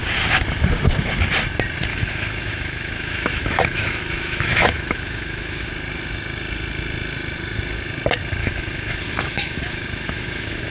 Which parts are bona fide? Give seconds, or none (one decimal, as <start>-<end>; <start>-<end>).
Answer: 0.0-1.9; 5.7-8.4

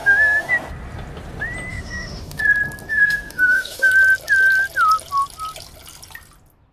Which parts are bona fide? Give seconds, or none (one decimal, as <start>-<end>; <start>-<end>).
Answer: 0.5-1.7; 2.4-2.9; 3.9-6.7

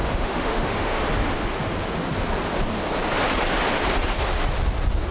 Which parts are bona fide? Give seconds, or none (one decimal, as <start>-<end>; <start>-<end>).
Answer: 1.0-5.1

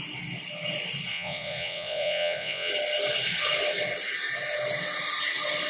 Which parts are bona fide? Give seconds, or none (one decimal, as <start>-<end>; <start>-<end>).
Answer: 0.0-1.1; 2.7-5.7

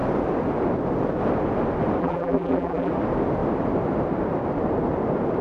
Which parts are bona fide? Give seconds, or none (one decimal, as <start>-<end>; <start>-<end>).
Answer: 0.0-2.0; 2.9-5.4

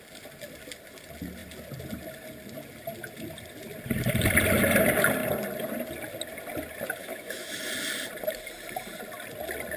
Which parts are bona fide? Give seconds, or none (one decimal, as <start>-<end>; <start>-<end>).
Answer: 0.0-7.0; 7.6-9.8